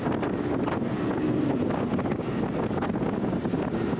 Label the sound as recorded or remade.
recorded